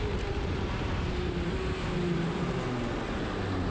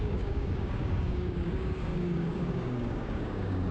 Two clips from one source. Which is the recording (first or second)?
first